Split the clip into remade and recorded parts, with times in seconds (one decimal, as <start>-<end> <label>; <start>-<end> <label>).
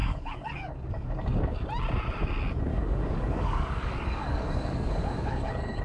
0.0-1.7 remade; 1.7-2.7 recorded; 2.7-5.8 remade